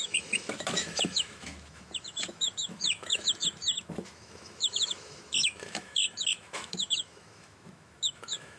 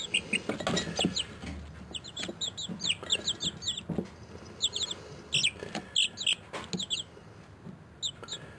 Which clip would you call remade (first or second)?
first